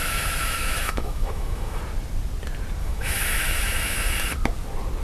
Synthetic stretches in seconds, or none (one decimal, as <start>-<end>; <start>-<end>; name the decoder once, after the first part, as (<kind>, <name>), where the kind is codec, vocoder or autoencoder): 0.0-1.8 (autoencoder, DAC-VAE); 2.8-4.1